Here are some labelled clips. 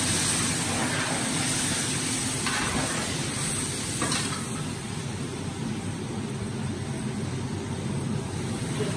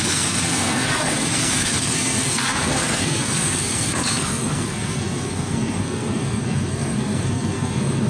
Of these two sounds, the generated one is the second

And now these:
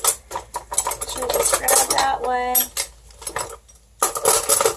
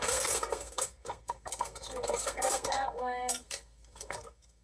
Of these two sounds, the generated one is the second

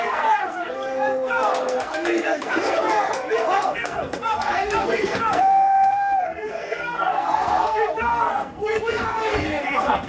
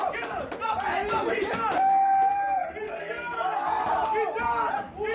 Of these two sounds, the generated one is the first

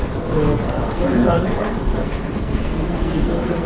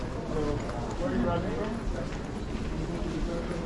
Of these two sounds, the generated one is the first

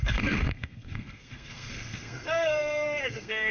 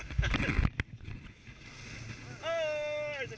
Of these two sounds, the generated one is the first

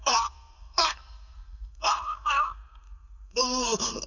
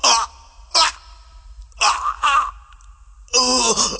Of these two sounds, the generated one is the first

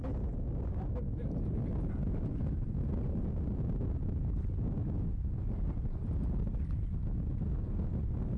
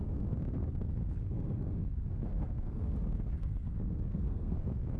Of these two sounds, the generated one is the second